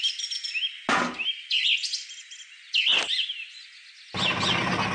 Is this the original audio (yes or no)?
yes